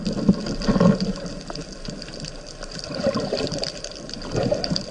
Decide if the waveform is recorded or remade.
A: recorded